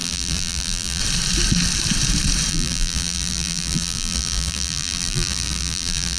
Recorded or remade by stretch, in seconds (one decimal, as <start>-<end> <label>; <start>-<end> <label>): 0.0-1.0 remade; 1.0-2.5 recorded; 2.5-6.2 remade